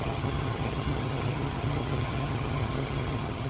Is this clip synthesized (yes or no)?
yes